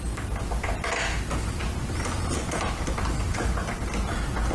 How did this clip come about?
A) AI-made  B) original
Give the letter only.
B